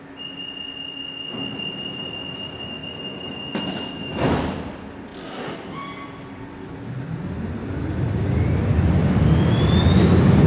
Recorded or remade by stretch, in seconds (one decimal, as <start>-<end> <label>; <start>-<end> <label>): 0.0-2.8 recorded; 2.8-4.4 remade; 4.4-10.5 recorded